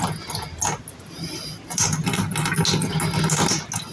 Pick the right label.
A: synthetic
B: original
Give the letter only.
B